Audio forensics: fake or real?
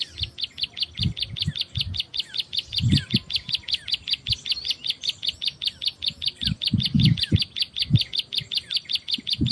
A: real